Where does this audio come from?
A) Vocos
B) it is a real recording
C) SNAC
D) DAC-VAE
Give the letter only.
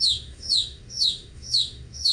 D